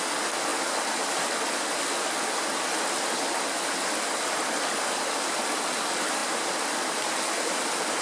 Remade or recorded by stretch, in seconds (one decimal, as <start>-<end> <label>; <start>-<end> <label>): 0.0-8.0 recorded